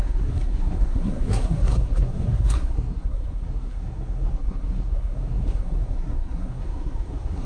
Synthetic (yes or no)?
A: yes